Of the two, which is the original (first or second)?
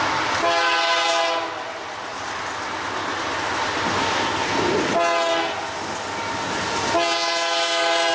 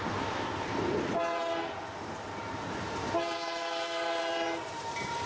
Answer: first